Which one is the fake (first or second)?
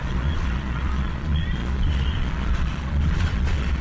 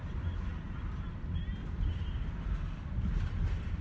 first